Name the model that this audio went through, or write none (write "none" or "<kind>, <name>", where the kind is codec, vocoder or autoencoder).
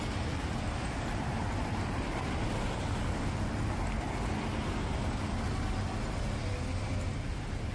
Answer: none